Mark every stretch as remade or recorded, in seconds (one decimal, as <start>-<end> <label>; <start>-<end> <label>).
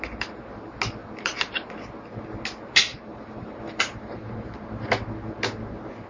0.0-1.0 recorded; 1.0-1.7 remade; 1.7-2.9 recorded; 2.9-4.3 remade; 4.3-6.1 recorded